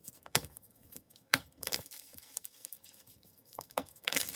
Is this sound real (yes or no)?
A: no